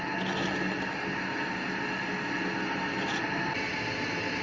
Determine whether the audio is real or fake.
real